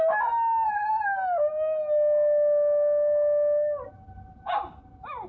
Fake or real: real